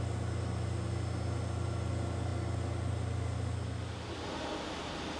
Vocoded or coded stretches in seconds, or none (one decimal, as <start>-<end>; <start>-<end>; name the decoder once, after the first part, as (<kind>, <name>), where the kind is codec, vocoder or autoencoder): none